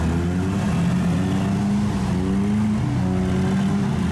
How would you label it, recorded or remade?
recorded